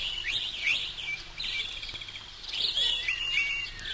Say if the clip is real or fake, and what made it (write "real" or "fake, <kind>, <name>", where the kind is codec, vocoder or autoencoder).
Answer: real